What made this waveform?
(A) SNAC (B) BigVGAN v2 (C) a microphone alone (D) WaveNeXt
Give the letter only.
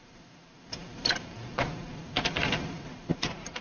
B